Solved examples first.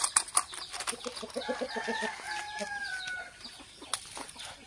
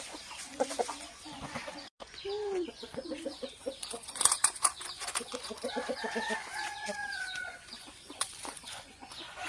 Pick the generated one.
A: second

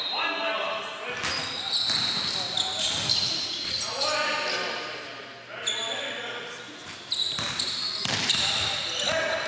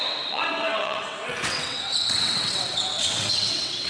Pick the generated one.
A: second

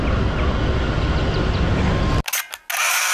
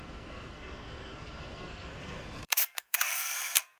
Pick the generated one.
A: second